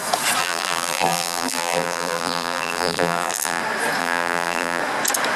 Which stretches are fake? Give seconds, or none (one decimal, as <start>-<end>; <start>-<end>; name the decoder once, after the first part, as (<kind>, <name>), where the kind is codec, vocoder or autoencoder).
0.4-3.6 (vocoder, BigVGAN v2); 4.0-4.8

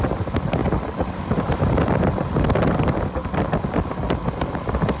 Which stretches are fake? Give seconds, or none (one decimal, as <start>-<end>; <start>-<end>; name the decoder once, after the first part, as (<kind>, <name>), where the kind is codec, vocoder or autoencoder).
none

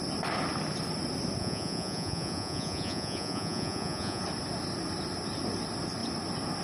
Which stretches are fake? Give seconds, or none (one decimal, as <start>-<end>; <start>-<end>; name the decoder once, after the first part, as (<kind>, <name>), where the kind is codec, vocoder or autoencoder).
1.4-4.2 (vocoder, Vocos)

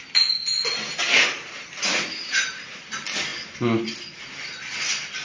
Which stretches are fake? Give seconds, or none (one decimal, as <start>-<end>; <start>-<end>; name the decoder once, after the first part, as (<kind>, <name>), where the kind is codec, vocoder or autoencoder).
0.9-2.6 (vocoder, BigVGAN v2)

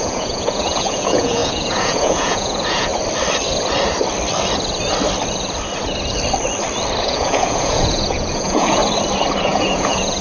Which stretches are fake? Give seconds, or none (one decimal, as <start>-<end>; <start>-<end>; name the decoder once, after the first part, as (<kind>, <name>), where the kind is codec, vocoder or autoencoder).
0.0-2.9 (vocoder, Vocos); 7.0-8.8; 9.4-10.2

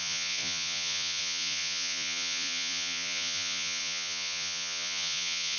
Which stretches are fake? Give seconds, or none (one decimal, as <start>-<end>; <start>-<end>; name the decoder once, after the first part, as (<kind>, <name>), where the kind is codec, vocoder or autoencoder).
0.0-5.6 (vocoder, Vocos)

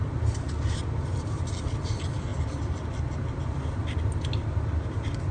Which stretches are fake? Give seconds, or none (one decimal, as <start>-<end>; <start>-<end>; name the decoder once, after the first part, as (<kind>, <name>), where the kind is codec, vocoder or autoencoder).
none